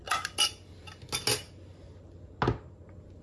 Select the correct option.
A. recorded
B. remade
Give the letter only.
A